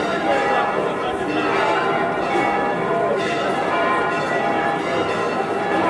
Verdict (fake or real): fake